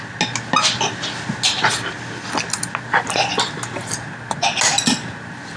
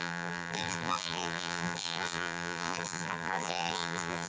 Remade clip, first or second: second